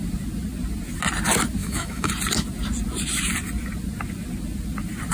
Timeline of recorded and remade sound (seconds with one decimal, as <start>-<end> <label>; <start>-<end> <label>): 0.0-1.6 recorded; 1.6-2.1 remade; 2.1-5.1 recorded